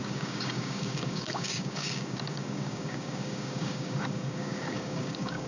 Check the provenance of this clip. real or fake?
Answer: fake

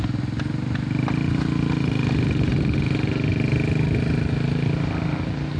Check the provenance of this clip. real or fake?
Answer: real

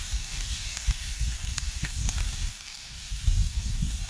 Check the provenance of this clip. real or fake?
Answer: fake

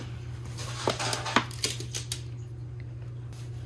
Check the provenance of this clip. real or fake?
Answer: real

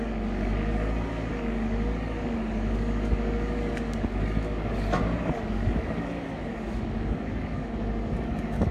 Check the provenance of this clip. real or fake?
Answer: fake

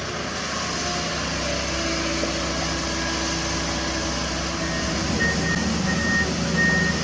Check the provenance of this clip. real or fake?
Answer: real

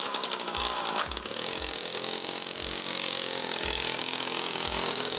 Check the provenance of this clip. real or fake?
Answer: fake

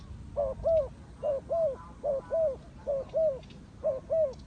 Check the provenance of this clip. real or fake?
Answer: real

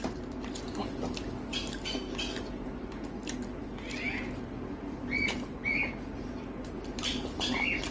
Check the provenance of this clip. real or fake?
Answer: real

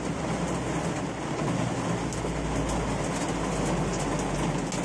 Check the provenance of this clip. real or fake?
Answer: real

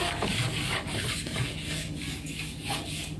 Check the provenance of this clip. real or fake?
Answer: fake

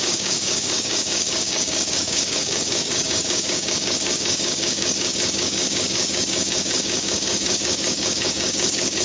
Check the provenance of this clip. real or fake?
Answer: fake